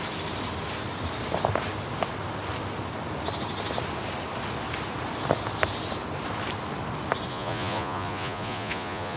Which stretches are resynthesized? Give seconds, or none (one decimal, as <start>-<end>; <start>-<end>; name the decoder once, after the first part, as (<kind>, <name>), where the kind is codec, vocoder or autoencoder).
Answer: 7.3-9.2 (vocoder, Vocos)

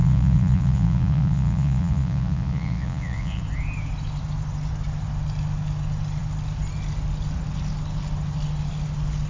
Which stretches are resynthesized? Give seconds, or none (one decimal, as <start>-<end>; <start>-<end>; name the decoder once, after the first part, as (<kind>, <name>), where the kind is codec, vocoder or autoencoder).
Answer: 0.0-3.4 (vocoder, Vocos)

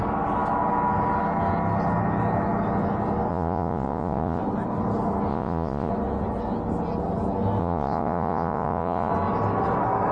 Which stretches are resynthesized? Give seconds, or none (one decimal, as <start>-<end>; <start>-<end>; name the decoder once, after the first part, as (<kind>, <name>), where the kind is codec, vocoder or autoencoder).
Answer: 3.3-4.4 (vocoder, Vocos); 5.3-5.9; 7.6-9.1

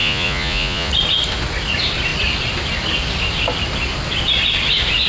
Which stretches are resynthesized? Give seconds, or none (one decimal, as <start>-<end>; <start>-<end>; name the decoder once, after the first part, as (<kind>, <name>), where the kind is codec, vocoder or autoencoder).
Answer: 0.0-0.9 (vocoder, Vocos)